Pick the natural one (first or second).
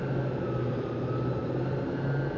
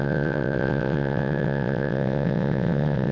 first